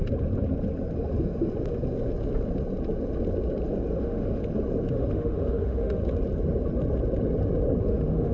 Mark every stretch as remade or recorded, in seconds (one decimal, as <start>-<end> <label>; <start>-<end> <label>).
0.0-4.0 recorded; 4.0-4.4 remade; 4.4-4.9 recorded; 4.9-6.0 remade; 6.0-7.8 recorded; 7.8-8.3 remade